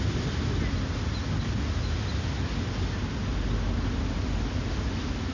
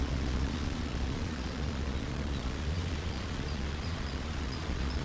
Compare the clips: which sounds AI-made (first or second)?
second